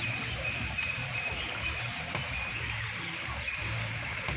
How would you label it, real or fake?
fake